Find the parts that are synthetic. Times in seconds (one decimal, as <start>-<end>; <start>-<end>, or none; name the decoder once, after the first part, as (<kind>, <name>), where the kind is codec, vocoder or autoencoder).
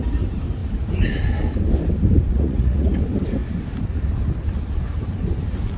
2.3-3.0 (vocoder, Vocos)